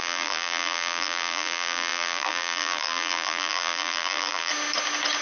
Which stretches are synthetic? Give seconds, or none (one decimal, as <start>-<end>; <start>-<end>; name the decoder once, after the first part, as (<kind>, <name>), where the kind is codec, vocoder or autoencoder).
0.0-4.5 (vocoder, BigVGAN v2)